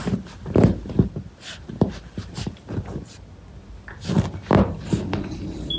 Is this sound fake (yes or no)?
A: no